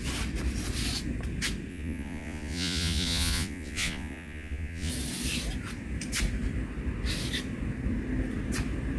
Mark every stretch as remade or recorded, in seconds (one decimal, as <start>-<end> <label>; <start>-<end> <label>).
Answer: 0.0-1.7 recorded; 1.7-4.9 remade; 4.9-9.0 recorded